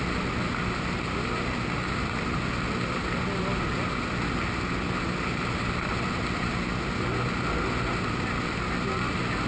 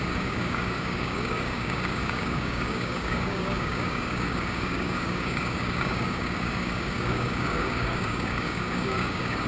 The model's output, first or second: second